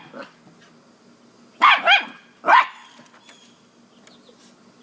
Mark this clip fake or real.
real